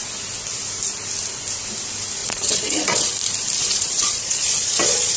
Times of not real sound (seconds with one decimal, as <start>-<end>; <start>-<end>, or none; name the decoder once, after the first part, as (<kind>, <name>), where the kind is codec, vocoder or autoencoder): 2.2-3.1 (vocoder, Vocos); 3.6-5.2